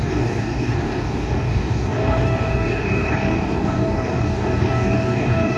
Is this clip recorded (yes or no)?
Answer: no